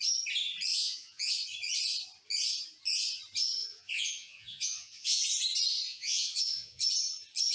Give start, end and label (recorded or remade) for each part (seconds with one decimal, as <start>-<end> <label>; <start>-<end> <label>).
0.0-0.7 recorded; 0.7-1.3 remade; 1.3-3.6 recorded; 3.6-5.2 remade; 5.2-5.9 recorded; 5.9-6.8 remade; 6.8-7.5 recorded